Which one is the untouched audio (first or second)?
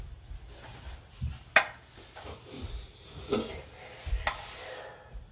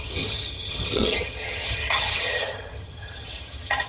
first